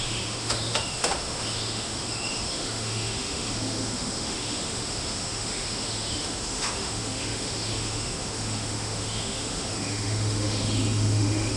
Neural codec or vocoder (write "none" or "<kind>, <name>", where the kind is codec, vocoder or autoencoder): autoencoder, DAC-VAE